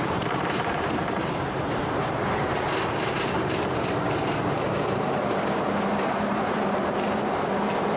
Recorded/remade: remade